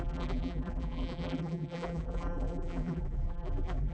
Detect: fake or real fake